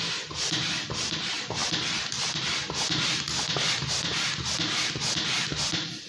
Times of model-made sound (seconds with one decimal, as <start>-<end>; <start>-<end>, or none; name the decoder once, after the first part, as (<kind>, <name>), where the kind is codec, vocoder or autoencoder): none